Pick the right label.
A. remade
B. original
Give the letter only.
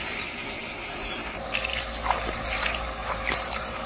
A